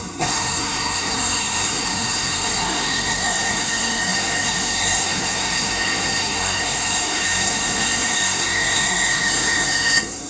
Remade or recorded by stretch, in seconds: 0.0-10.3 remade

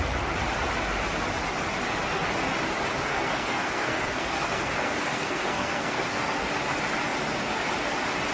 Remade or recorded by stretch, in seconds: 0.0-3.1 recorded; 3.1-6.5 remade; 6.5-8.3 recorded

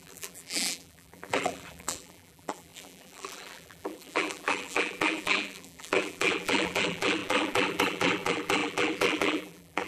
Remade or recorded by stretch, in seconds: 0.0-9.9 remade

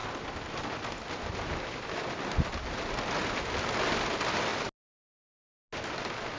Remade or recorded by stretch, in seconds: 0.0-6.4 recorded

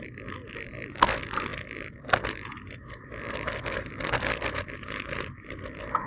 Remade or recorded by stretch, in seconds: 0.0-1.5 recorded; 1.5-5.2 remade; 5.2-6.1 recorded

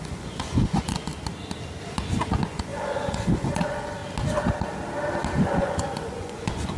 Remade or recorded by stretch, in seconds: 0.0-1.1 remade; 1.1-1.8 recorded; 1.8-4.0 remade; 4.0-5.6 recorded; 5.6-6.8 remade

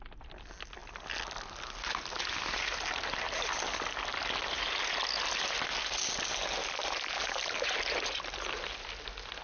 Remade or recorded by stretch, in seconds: 0.0-9.4 recorded

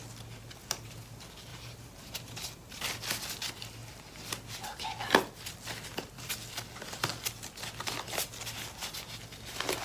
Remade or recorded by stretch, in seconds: 0.0-1.5 recorded; 1.5-2.8 remade; 2.8-9.8 recorded